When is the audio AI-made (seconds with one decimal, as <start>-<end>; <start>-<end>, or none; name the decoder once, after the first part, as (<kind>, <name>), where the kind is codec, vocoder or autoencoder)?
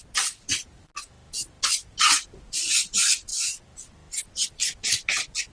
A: none